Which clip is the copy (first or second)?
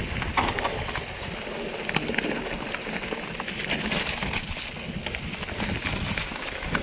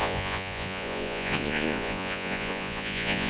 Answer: second